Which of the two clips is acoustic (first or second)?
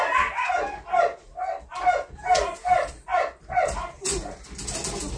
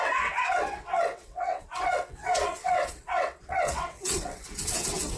first